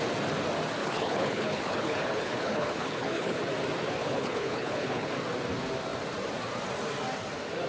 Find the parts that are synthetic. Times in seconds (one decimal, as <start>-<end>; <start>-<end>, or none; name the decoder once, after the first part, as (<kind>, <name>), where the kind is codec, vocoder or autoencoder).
0.8-3.4 (codec, HILCodec); 4.0-5.1